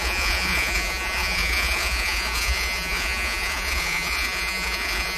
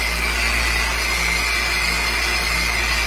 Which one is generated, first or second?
first